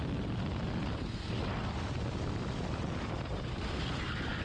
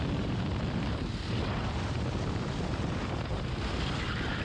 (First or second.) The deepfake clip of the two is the second